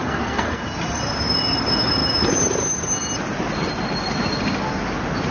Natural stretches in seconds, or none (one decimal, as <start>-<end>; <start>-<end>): 0.6-5.3